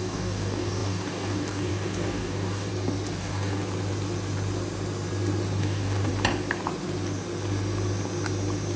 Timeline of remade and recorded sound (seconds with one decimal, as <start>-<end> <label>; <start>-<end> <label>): 0.0-2.7 remade; 2.7-3.2 recorded; 3.2-3.6 remade; 3.6-5.6 recorded; 5.6-6.1 remade; 6.1-8.8 recorded